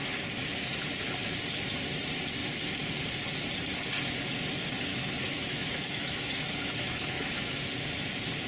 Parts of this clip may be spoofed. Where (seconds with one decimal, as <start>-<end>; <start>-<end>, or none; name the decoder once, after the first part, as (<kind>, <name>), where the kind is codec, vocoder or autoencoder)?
4.9-7.6 (autoencoder, DAC-VAE)